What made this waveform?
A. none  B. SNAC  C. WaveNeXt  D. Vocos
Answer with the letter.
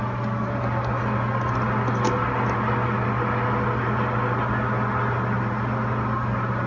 A